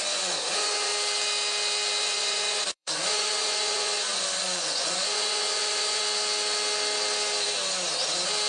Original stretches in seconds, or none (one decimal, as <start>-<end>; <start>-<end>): 0.9-2.0; 6.0-8.5